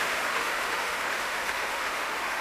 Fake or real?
fake